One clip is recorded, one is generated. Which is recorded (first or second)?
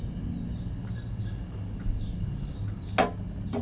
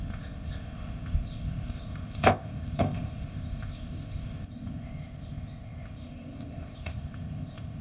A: first